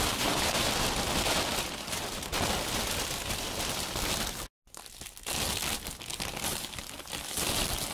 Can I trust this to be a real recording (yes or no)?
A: yes